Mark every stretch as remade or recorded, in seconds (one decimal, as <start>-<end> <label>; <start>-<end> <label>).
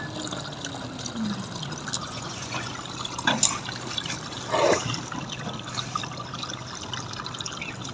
0.0-2.0 recorded; 2.0-2.7 remade; 2.7-7.9 recorded